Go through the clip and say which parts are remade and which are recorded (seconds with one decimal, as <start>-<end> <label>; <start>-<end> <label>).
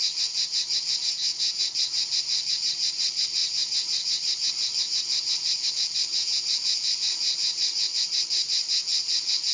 0.0-3.4 recorded; 3.4-5.7 remade; 5.7-9.5 recorded